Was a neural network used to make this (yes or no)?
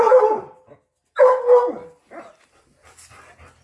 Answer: no